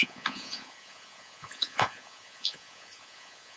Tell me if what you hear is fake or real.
fake